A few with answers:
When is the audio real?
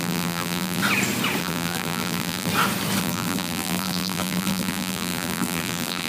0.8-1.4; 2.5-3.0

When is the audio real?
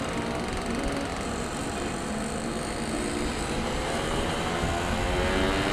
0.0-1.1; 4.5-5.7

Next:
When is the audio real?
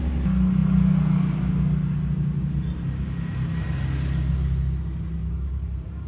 0.0-5.2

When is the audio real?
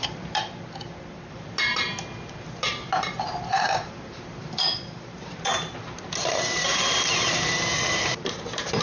0.4-1.3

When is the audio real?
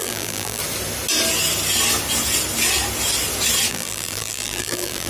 0.6-3.7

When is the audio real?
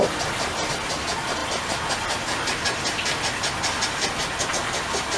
0.0-5.2